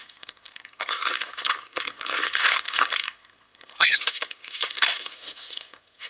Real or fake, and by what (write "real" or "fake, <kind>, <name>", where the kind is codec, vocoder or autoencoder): fake, codec, SNAC